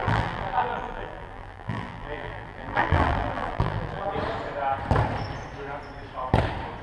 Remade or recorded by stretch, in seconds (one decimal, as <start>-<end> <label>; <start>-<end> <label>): 0.0-4.1 remade; 4.1-6.8 recorded